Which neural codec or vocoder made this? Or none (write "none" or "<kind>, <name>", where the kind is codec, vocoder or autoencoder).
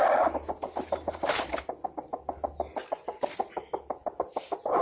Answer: none